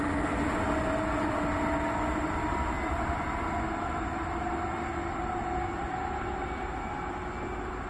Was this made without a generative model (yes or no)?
yes